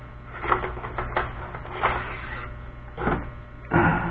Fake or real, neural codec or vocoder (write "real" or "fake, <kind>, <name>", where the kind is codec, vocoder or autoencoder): real